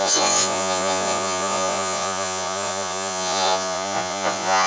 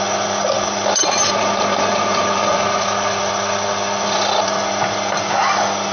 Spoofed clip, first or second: first